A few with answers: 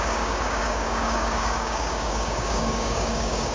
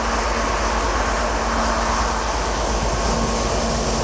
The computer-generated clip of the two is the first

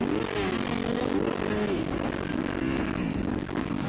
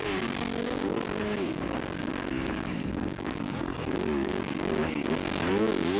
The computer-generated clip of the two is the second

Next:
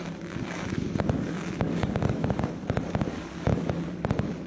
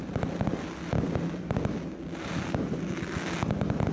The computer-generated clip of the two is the first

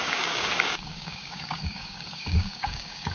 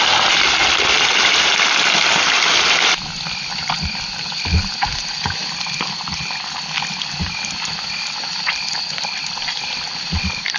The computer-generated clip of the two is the first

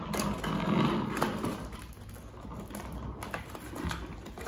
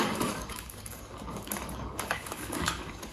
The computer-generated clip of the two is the second